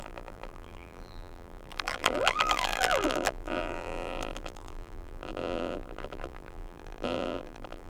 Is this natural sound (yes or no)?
no